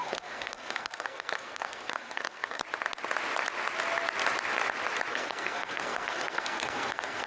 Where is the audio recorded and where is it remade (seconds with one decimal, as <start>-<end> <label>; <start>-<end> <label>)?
0.0-2.6 remade; 2.6-5.1 recorded; 5.1-7.3 remade